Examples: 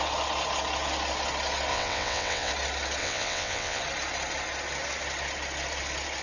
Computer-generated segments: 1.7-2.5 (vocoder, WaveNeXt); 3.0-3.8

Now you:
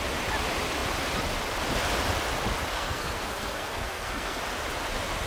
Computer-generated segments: 2.7-4.4 (codec, SNAC)

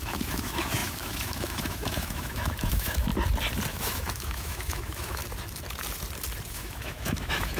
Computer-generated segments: 0.0-3.1 (autoencoder, DAC-VAE); 3.7-5.2; 6.5-7.6

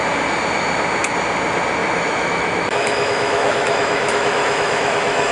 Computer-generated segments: 1.8-5.3 (autoencoder, DAC-VAE)